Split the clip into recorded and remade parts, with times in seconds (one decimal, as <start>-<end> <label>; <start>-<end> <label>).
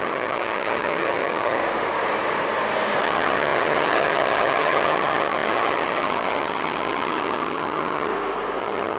0.0-1.6 remade; 1.6-3.0 recorded; 3.0-8.1 remade; 8.1-8.6 recorded; 8.6-9.0 remade